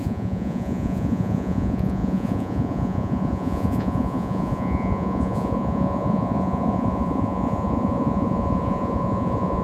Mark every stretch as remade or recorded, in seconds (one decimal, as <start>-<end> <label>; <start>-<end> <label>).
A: 0.0-9.6 remade